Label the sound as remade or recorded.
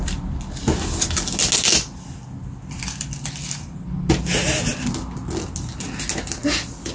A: recorded